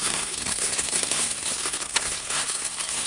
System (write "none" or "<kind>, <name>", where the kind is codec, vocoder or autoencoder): codec, SNAC